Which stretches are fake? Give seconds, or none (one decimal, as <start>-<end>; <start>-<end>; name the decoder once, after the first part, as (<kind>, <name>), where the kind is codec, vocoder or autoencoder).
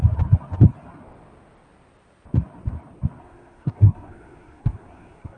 3.2-5.4 (codec, SNAC)